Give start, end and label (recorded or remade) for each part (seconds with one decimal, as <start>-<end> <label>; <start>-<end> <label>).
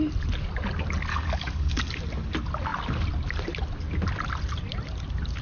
0.0-1.1 recorded; 1.1-2.0 remade; 2.0-5.4 recorded